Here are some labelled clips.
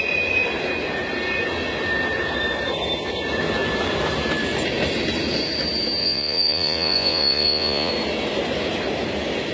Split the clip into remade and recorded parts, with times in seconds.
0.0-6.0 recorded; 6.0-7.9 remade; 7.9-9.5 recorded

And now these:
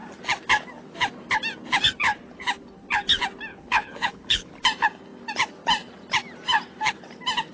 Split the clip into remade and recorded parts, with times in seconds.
0.0-3.5 recorded; 3.5-4.5 remade; 4.5-7.5 recorded

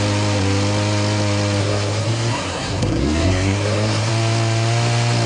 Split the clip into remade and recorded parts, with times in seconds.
0.0-1.6 recorded; 1.6-4.1 remade; 4.1-5.3 recorded

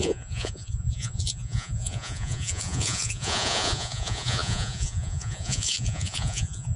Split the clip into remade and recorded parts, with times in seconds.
0.0-6.8 remade

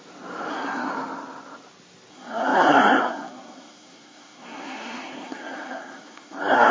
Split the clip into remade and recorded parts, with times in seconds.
0.0-0.5 recorded; 0.5-0.9 remade; 0.9-2.1 recorded; 2.1-6.7 remade